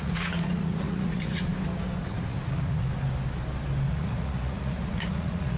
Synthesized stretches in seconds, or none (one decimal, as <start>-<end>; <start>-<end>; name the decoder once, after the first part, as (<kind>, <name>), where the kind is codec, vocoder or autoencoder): 0.0-1.5 (vocoder, Vocos); 2.1-2.9; 3.9-5.6